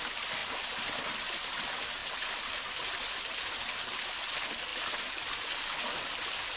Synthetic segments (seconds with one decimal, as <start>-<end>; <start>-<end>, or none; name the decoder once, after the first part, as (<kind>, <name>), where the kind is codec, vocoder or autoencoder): 2.0-4.0 (vocoder, BigVGAN v2); 4.7-5.3

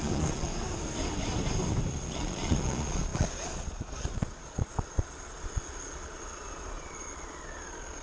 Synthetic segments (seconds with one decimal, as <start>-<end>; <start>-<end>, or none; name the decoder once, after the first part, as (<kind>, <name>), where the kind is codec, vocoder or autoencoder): 0.0-0.5 (vocoder, Vocos); 1.9-8.0

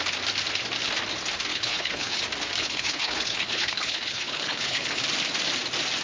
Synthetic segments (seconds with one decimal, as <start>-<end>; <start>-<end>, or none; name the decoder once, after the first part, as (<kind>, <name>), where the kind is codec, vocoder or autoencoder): 1.5-2.2 (codec, HILCodec); 2.6-5.0